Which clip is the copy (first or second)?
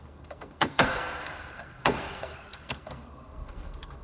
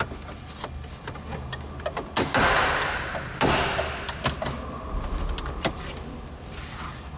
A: first